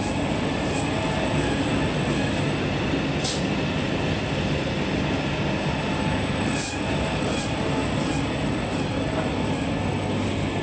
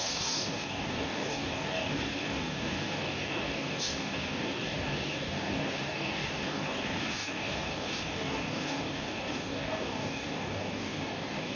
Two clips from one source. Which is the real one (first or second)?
first